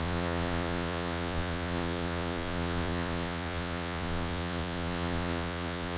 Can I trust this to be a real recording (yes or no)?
no